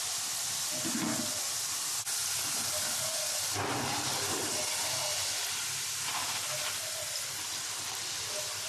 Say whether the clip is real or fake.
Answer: real